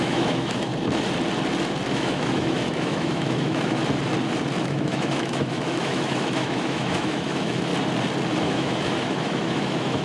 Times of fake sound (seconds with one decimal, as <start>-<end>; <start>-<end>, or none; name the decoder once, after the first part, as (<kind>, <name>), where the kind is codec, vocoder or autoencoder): 0.0-0.7 (autoencoder, DAC-VAE); 1.9-3.8; 4.6-7.7; 8.4-10.0